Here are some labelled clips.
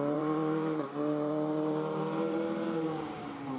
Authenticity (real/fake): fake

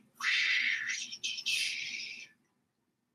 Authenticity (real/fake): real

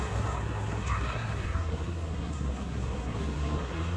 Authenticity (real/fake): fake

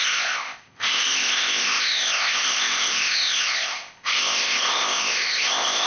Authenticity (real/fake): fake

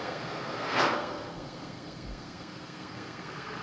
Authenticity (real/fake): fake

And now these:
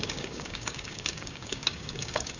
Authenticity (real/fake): fake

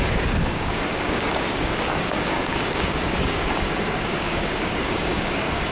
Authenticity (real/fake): fake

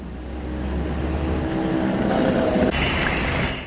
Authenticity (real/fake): real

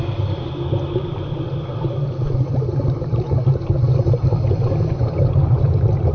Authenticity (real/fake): fake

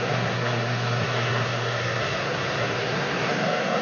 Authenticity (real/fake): fake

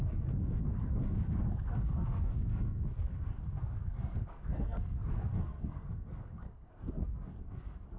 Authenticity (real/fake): fake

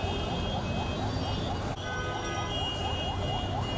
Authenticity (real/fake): real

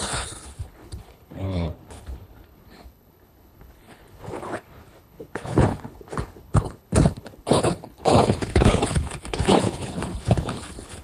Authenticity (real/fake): fake